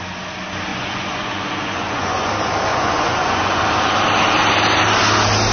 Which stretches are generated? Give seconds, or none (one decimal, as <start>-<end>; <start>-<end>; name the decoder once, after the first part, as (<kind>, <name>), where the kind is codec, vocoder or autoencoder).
0.7-2.3 (vocoder, Vocos); 2.7-3.6